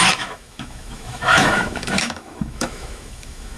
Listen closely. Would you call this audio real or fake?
fake